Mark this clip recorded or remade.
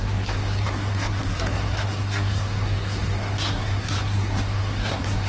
remade